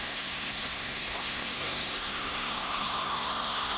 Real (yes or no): no